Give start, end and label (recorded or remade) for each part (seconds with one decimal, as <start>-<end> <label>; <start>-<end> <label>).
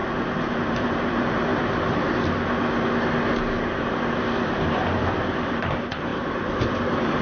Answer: 0.0-0.6 recorded; 0.6-1.5 remade; 1.5-4.1 recorded; 4.1-7.2 remade